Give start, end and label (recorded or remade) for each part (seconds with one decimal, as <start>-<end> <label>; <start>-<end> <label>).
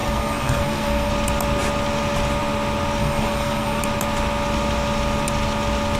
0.0-1.1 remade; 1.1-3.0 recorded; 3.0-3.8 remade; 3.8-6.0 recorded